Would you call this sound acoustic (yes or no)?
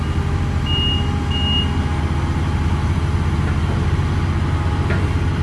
yes